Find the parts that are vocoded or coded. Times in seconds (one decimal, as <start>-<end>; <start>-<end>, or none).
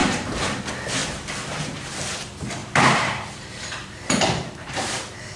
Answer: 0.0-0.6; 1.0-1.9; 2.6-5.4